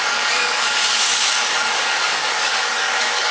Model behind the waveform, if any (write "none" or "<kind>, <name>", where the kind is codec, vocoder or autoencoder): codec, DAC